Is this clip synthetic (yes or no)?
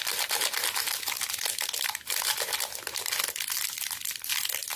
no